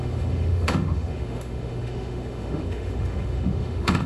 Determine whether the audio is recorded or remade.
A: remade